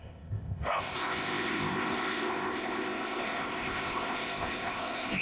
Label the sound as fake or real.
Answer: fake